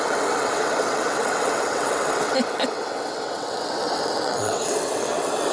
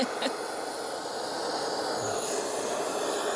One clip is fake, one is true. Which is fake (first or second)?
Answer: first